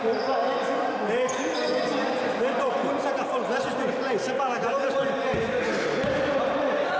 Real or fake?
real